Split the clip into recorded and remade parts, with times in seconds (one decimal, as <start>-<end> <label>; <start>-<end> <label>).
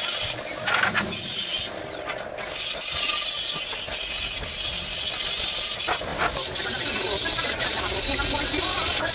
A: 0.0-1.5 recorded; 1.5-2.3 remade; 2.3-9.1 recorded